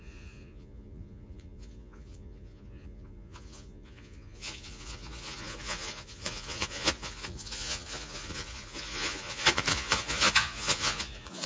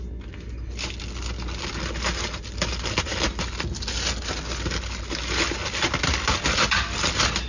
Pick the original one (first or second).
second